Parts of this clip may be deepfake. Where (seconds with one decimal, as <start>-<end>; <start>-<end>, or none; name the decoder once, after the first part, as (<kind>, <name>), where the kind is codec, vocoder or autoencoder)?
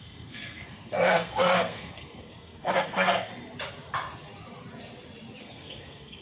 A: 0.0-3.3 (codec, SNAC); 5.4-6.2